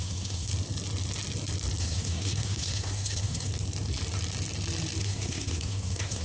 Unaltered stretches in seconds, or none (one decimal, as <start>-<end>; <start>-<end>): 0.5-1.8; 3.5-5.0